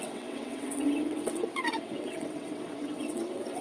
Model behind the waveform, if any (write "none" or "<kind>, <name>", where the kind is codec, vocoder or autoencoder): vocoder, WaveNeXt